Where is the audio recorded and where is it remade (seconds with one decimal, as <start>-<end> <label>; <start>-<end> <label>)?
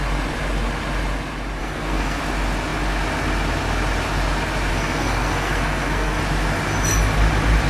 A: 0.0-1.6 recorded; 1.6-2.2 remade; 2.2-4.7 recorded; 4.7-6.2 remade; 6.2-7.7 recorded